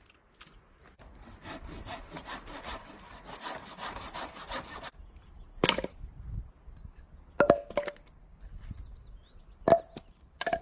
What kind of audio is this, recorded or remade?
recorded